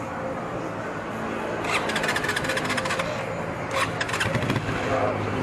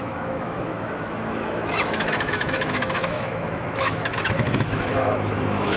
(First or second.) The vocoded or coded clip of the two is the second